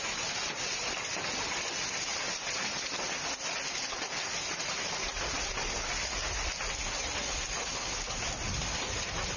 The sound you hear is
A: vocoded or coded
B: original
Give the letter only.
B